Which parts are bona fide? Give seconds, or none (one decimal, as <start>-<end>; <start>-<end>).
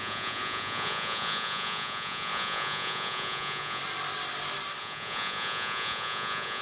3.8-4.8